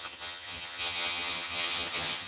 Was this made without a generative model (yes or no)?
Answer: no